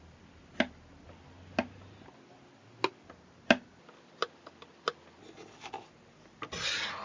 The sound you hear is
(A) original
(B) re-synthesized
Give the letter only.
A